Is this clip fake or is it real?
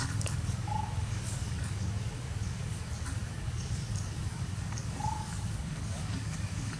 fake